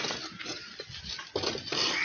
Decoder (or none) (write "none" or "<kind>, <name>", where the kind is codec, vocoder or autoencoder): none